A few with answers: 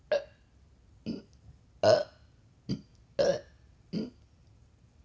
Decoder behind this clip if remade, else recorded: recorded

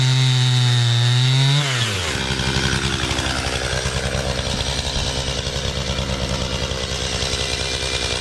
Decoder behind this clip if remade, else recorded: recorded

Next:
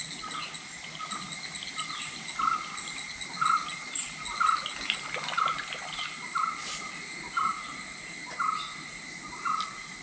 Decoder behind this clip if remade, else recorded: recorded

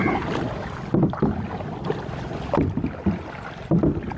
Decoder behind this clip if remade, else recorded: remade, vocoder, BigVGAN v2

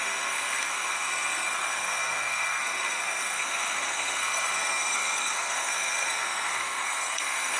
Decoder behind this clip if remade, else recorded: remade, codec, SNAC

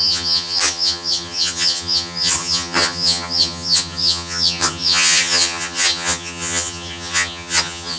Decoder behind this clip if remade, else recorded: remade, vocoder, HiFi-GAN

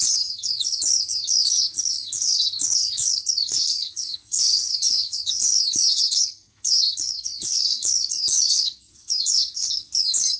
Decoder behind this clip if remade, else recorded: remade, codec, SNAC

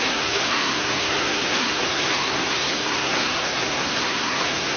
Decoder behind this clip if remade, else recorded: remade, codec, SNAC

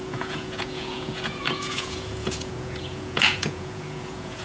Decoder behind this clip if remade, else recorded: remade, vocoder, Vocos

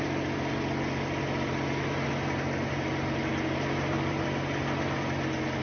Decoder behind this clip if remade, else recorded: recorded